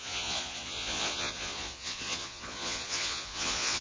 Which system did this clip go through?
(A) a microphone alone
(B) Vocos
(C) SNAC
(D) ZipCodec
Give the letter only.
B